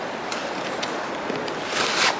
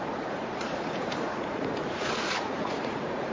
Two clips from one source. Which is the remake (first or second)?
second